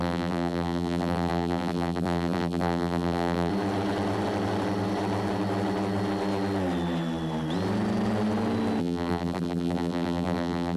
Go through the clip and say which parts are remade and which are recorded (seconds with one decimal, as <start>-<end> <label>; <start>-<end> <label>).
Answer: 0.0-3.5 remade; 3.5-8.8 recorded; 8.8-10.8 remade